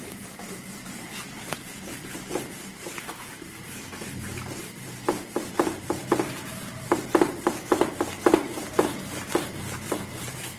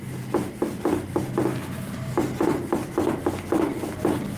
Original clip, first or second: second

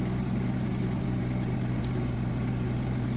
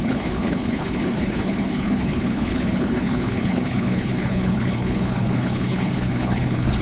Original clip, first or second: first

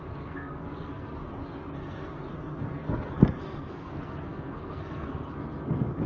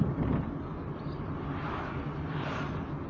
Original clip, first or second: second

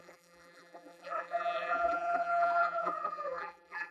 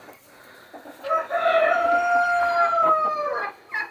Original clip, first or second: second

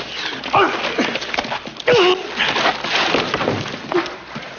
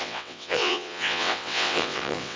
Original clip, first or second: first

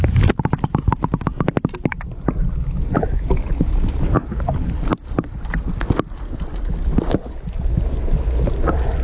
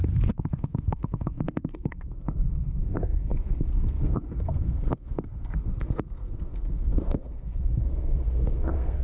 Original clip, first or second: first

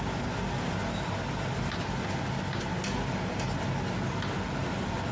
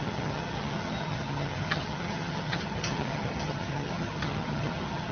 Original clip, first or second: first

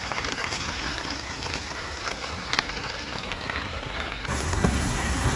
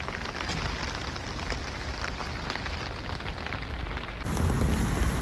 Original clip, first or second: second